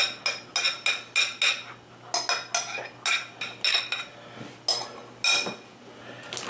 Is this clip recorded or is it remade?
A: recorded